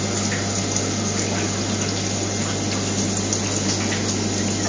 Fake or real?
real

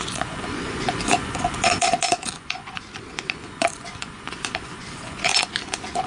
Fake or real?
fake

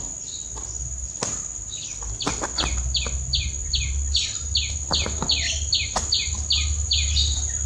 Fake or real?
real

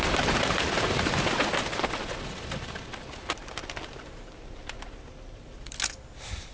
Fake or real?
real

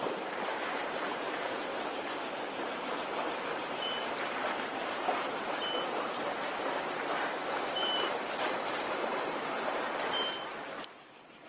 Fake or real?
fake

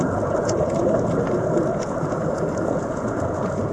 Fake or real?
fake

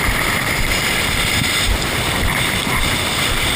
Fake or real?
fake